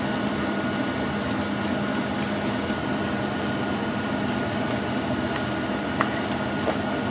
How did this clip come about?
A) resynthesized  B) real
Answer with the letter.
B